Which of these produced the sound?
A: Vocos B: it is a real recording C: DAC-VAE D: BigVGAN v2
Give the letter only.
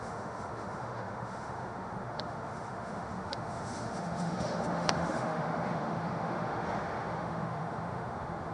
C